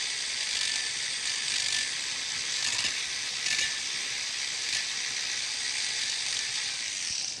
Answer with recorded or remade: recorded